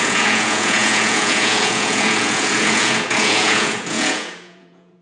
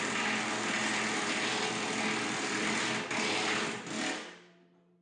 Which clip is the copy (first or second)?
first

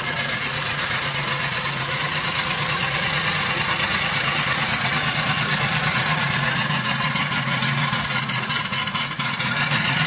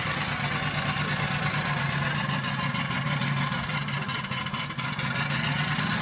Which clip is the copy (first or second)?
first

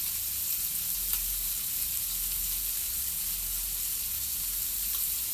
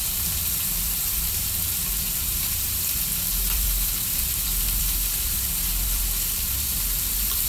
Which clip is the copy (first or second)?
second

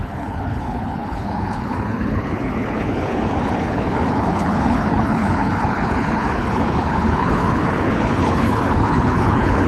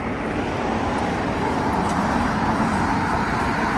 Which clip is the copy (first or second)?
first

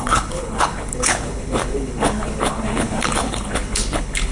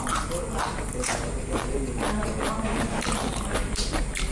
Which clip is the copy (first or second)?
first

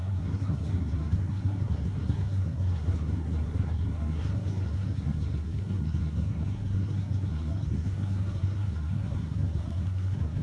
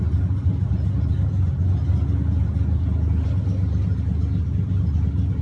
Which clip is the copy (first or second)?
first